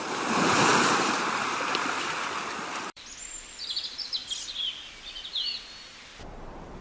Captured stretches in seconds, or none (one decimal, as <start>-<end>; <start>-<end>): 0.0-0.7; 3.6-6.8